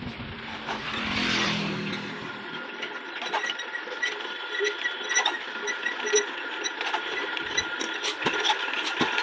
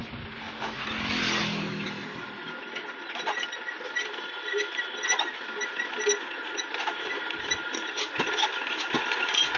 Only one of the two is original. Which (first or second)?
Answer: second